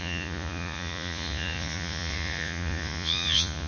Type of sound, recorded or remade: remade